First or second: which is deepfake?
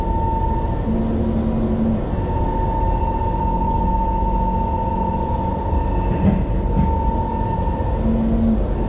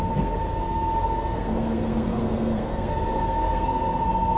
second